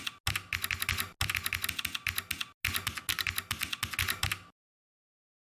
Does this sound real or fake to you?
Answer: real